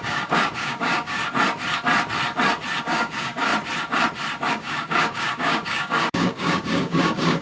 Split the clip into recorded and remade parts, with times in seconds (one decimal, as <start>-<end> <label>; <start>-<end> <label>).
0.0-1.2 remade; 1.2-2.8 recorded; 2.8-3.5 remade; 3.5-4.5 recorded; 4.5-7.4 remade